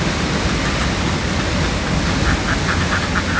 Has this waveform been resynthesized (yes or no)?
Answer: no